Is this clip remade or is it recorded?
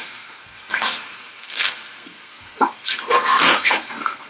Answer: remade